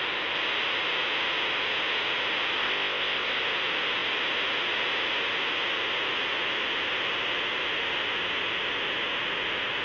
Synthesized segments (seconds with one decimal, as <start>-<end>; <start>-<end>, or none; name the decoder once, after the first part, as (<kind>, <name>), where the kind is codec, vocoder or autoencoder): 2.6-3.4 (codec, ZipCodec)